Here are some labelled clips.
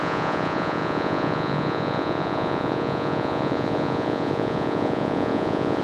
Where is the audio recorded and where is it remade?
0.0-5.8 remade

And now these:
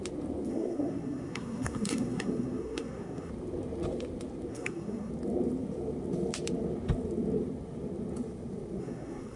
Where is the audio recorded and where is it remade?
0.0-0.5 recorded; 0.5-3.3 remade; 3.3-4.5 recorded; 4.5-5.1 remade; 5.1-8.8 recorded; 8.8-9.4 remade

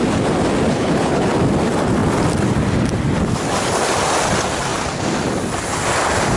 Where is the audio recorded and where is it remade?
0.0-0.7 recorded; 0.7-1.3 remade; 1.3-6.4 recorded

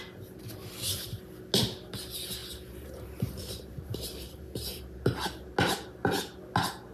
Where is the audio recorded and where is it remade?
0.0-0.6 recorded; 0.6-1.2 remade; 1.2-2.4 recorded; 2.4-4.8 remade; 4.8-6.9 recorded

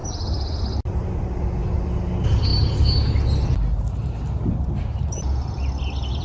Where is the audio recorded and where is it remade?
0.0-6.2 recorded

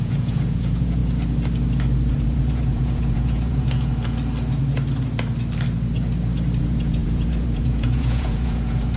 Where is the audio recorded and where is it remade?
0.0-1.0 remade; 1.0-2.1 recorded; 2.1-3.9 remade; 3.9-6.6 recorded; 6.6-9.0 remade

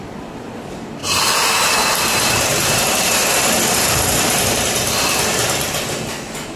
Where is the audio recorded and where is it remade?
0.0-1.0 recorded; 1.0-3.5 remade; 3.5-6.6 recorded